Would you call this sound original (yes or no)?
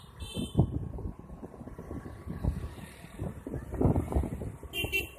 yes